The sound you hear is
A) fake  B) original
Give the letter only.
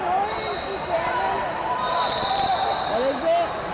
B